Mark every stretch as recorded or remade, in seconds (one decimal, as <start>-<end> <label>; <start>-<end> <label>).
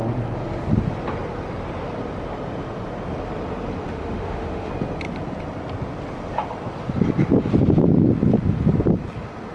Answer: 0.0-3.9 recorded; 3.9-4.7 remade; 4.7-9.5 recorded